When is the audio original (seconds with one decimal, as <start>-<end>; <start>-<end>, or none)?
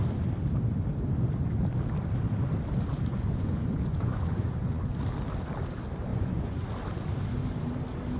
0.0-3.1; 4.8-6.1; 6.7-8.2